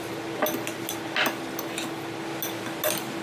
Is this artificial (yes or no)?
no